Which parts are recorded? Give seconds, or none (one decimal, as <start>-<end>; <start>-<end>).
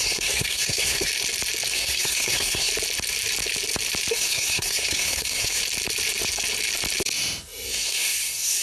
1.1-1.7; 2.7-4.1; 5.6-7.7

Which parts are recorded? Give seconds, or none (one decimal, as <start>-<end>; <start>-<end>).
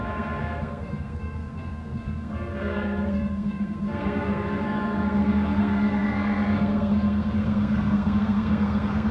none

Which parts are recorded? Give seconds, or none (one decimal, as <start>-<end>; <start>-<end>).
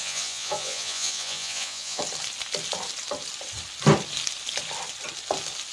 2.0-5.7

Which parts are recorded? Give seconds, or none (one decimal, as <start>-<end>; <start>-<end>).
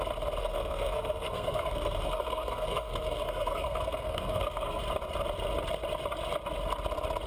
0.0-0.4; 4.8-7.3